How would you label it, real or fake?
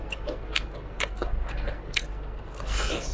fake